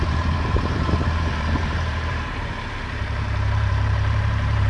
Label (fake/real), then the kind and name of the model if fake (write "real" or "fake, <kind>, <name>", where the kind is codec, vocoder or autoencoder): fake, vocoder, BigVGAN v2